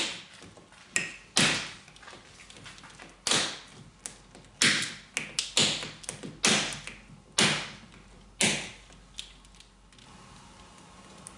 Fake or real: real